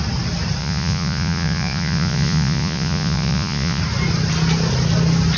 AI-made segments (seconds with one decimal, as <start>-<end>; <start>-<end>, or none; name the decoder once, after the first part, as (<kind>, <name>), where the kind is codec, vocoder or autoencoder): 0.6-3.8 (vocoder, Vocos)